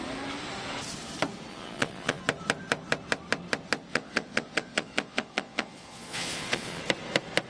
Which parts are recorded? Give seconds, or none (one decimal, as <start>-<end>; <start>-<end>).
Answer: 0.0-1.5; 2.2-3.9; 6.8-7.5